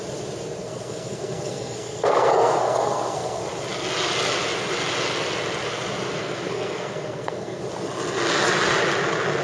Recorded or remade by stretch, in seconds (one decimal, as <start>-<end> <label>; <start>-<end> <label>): 0.0-0.6 recorded; 0.6-3.4 remade; 3.4-6.2 recorded; 6.2-7.6 remade; 7.6-9.4 recorded